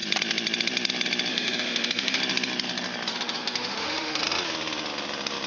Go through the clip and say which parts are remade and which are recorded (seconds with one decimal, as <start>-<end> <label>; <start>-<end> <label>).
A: 0.0-1.3 recorded; 1.3-2.2 remade; 2.2-3.1 recorded; 3.1-4.2 remade; 4.2-5.5 recorded